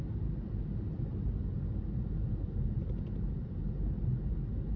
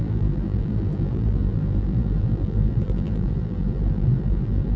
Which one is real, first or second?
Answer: first